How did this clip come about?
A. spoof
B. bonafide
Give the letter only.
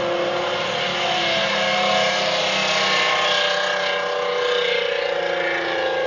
B